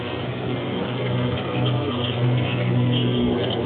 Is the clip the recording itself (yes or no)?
no